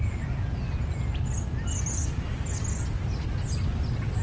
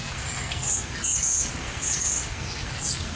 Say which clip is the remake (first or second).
second